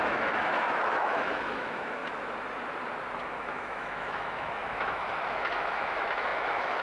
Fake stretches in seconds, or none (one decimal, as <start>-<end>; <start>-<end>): 0.0-2.0; 3.2-6.8